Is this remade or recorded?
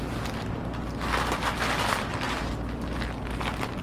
recorded